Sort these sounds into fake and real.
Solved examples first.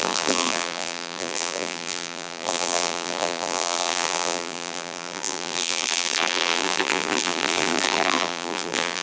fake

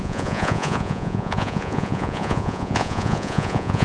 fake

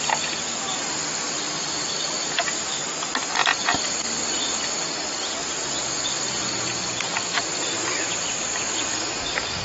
real